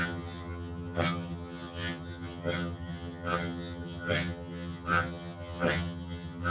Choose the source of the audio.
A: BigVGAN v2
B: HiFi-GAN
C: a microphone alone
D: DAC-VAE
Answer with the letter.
B